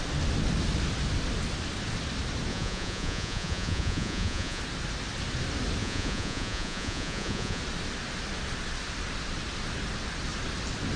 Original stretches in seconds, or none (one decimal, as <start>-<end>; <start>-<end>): 0.0-2.5; 4.6-5.8; 7.6-11.0